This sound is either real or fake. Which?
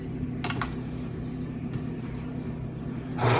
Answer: real